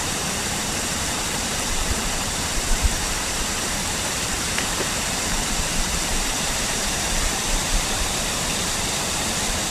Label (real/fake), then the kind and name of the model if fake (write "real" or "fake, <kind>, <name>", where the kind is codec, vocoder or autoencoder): fake, vocoder, BigVGAN v2